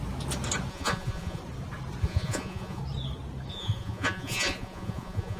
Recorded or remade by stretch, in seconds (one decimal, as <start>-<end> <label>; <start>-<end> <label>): 0.0-0.7 recorded; 0.7-1.4 remade; 1.4-2.0 recorded; 2.0-2.8 remade; 2.8-3.5 recorded; 3.5-5.4 remade